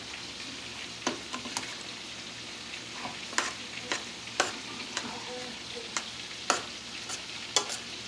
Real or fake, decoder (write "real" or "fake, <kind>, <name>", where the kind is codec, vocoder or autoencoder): real